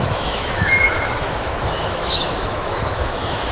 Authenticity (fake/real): fake